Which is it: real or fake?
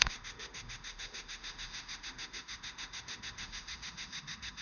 fake